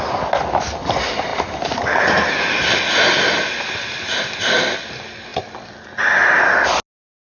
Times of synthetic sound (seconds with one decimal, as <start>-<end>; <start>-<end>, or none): none

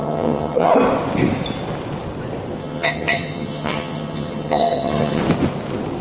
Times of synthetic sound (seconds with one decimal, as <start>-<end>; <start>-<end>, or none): 0.0-0.7; 2.6-5.2

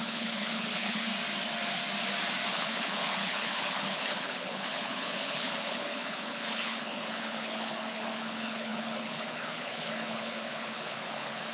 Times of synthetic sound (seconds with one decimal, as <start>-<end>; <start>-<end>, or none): 0.0-1.1; 2.5-11.5

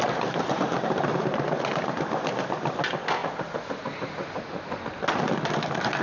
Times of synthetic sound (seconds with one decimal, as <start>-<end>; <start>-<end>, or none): none

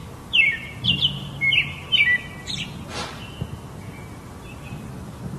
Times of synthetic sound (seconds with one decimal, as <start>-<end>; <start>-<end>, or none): 4.0-4.8

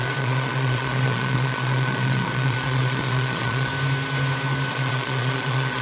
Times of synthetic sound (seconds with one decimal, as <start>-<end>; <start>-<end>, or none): 0.0-3.7; 4.7-5.8

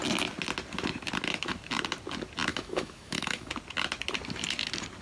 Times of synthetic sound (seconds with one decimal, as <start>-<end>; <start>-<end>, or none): 2.5-3.5